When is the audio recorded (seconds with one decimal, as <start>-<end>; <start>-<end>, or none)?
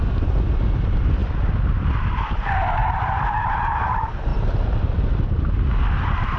0.0-2.8; 3.7-6.4